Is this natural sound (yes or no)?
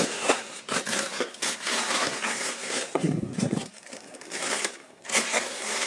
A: no